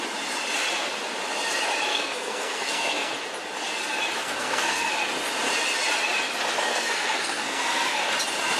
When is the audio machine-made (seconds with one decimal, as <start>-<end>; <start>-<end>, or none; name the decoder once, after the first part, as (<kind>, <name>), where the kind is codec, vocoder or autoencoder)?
1.9-3.1 (codec, SNAC); 4.2-4.9; 6.7-8.0